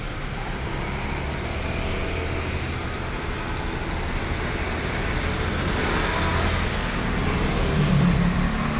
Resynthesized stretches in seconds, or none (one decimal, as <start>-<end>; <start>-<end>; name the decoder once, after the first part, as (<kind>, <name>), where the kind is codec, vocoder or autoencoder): none